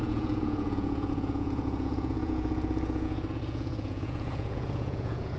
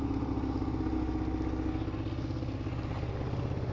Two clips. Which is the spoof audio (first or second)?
first